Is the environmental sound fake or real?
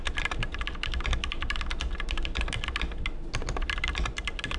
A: real